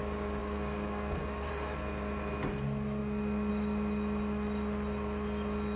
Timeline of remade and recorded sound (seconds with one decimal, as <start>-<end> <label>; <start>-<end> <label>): 0.0-0.4 recorded; 0.4-1.5 remade; 1.5-5.8 recorded

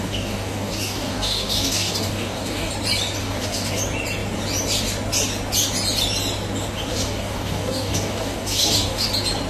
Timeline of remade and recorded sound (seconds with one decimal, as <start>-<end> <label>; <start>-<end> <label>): 0.0-2.7 remade; 2.7-3.2 recorded; 3.2-3.8 remade; 3.8-6.9 recorded; 6.9-9.1 remade; 9.1-9.5 recorded